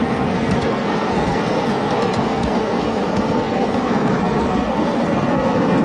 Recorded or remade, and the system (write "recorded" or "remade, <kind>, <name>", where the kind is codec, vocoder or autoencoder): remade, codec, SNAC